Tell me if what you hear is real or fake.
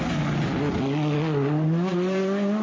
real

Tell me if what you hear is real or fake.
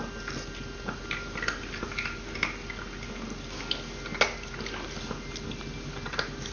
real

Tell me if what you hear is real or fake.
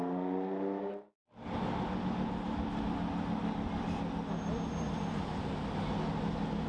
real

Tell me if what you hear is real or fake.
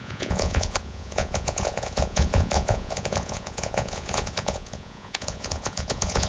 fake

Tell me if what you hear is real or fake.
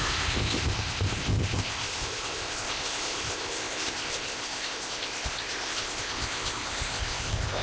fake